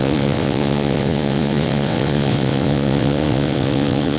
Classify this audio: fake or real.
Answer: fake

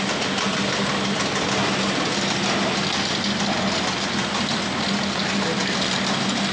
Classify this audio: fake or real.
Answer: real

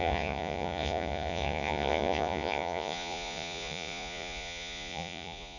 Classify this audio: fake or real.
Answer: fake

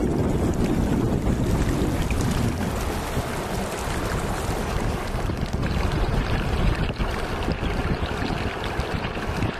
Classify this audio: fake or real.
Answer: real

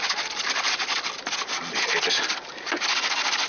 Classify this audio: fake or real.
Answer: real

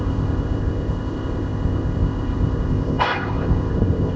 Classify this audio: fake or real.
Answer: fake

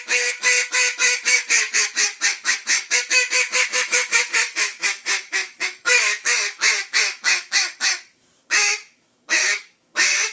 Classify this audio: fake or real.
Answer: fake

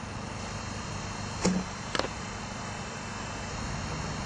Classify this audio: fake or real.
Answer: real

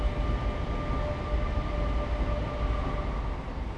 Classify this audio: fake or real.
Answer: real